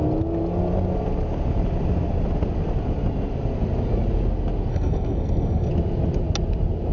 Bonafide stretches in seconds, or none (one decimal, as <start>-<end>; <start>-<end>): 0.0-4.7; 5.7-6.9